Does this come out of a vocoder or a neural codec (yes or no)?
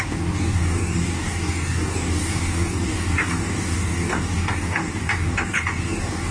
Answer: yes